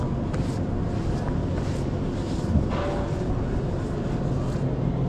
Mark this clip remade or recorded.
recorded